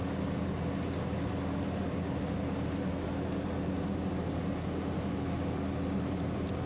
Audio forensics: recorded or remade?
recorded